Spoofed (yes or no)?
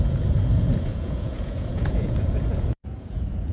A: yes